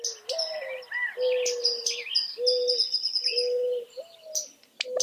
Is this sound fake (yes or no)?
no